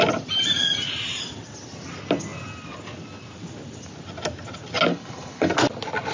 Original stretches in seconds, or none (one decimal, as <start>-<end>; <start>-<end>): 0.0-4.9; 5.5-6.1